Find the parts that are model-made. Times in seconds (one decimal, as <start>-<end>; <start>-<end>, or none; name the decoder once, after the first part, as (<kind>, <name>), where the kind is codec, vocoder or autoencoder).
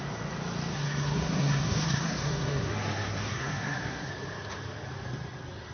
0.7-4.1 (codec, SNAC)